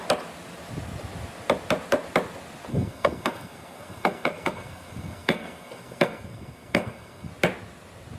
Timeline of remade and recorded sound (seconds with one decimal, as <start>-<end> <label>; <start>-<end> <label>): 0.0-2.7 recorded; 2.7-7.3 remade; 7.3-8.2 recorded